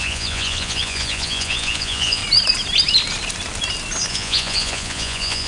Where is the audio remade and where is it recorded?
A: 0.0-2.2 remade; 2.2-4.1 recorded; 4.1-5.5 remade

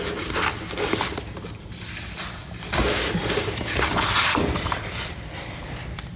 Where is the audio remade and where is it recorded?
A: 0.0-6.2 recorded

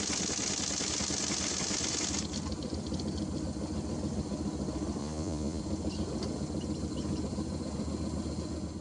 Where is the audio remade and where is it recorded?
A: 0.0-5.0 recorded; 5.0-5.6 remade; 5.6-8.8 recorded

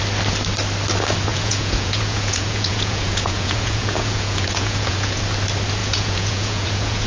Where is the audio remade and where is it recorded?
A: 0.0-1.3 recorded; 1.3-5.2 remade; 5.2-5.8 recorded; 5.8-7.1 remade